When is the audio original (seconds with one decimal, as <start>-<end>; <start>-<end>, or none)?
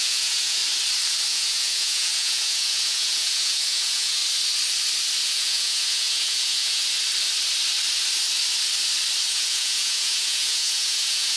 0.6-1.3; 4.2-5.2; 6.8-9.3